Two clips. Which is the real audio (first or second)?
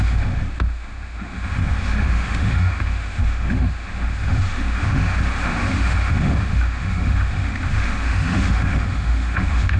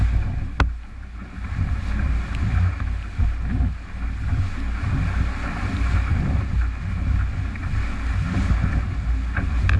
second